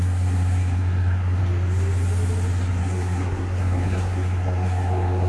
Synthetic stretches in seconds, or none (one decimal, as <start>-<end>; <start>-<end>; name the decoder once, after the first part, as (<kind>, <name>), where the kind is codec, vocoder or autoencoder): 0.0-1.4 (codec, SNAC); 2.8-5.3

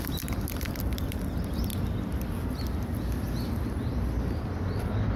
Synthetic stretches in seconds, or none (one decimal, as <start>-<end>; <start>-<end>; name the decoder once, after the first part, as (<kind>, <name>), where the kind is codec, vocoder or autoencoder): 0.0-1.7 (vocoder, BigVGAN v2); 4.8-5.2

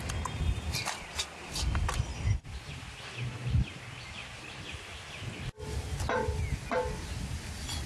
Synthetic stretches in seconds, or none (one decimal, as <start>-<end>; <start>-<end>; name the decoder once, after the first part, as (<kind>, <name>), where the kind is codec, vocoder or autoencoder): 4.2-4.8 (vocoder, BigVGAN v2)

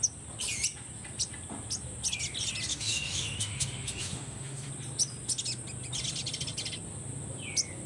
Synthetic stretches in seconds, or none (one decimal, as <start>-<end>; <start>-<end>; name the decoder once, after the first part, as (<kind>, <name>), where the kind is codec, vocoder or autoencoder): 2.7-4.7 (autoencoder, DAC-VAE)